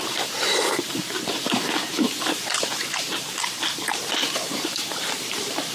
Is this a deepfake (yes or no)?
yes